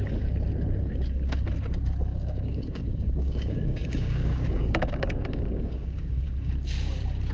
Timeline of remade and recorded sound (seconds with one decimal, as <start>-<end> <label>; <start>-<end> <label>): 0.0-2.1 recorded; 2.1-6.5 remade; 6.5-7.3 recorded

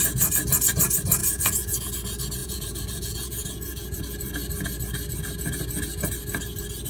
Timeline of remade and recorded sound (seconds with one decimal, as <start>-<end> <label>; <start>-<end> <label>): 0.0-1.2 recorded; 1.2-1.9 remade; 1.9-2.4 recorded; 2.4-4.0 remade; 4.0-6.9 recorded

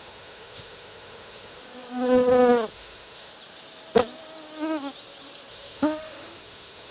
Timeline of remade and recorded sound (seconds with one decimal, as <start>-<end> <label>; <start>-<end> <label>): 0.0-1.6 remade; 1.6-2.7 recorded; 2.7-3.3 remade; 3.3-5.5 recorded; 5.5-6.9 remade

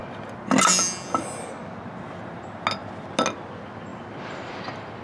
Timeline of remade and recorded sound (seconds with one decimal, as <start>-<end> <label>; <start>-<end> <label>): 0.0-3.9 recorded; 3.9-4.6 remade; 4.6-5.0 recorded

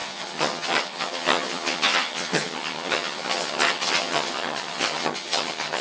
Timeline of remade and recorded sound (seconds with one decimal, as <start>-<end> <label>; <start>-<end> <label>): 0.0-5.8 remade